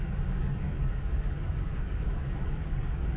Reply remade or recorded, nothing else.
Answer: remade